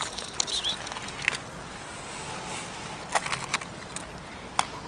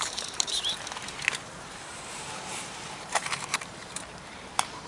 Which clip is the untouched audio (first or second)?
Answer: first